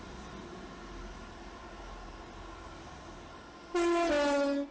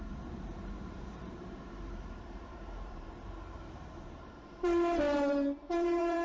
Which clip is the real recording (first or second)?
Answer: first